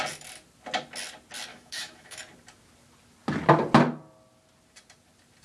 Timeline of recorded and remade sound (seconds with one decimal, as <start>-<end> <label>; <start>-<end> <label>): 0.0-1.5 recorded; 1.5-2.2 remade; 2.2-5.4 recorded